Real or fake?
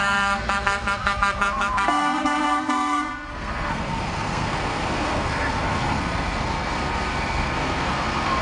fake